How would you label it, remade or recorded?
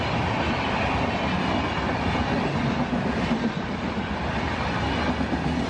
recorded